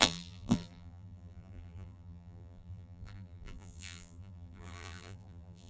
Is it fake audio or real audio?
fake